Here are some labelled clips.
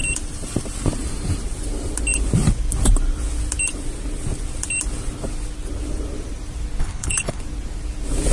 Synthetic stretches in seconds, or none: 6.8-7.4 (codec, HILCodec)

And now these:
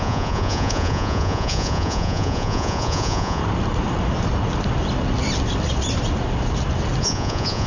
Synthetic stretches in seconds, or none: 0.0-3.4 (vocoder, Vocos); 7.0-7.7

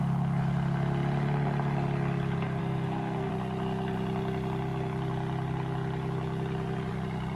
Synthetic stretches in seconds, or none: 2.6-3.3 (codec, SNAC)

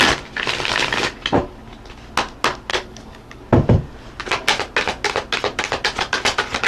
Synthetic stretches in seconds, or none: 2.7-3.4 (codec, DAC)

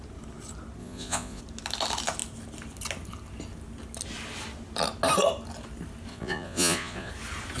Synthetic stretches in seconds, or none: 0.8-1.4 (vocoder, Vocos); 6.1-7.1